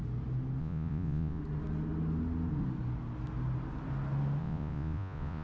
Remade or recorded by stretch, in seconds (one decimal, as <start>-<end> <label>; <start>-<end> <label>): 0.0-0.6 recorded; 0.6-1.4 remade; 1.4-4.4 recorded; 4.4-5.4 remade